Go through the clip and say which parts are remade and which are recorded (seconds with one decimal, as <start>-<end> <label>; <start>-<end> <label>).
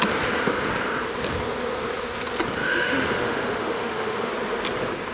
0.0-2.6 recorded; 2.6-4.3 remade; 4.3-5.1 recorded